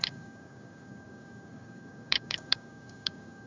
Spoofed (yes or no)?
yes